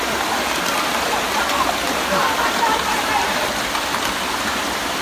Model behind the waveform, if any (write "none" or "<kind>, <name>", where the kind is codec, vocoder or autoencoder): none